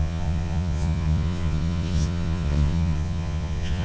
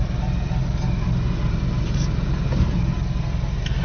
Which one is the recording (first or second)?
second